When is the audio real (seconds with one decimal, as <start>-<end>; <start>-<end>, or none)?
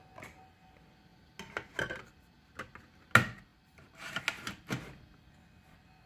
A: 0.0-3.5; 4.2-6.1